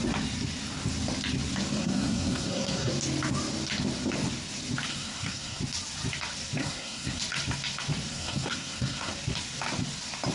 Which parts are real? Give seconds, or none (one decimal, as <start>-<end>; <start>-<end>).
0.0-1.8; 2.9-4.9; 5.6-6.6; 7.2-8.1; 9.1-10.3